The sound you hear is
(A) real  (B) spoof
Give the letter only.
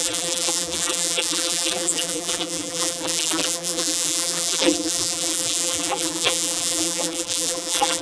B